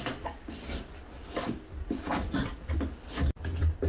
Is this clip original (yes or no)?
yes